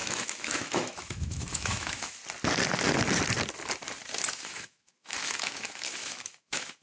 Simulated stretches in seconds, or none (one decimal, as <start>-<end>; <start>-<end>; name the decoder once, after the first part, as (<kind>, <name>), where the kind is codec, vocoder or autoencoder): 0.0-2.2 (autoencoder, DAC-VAE); 4.3-6.8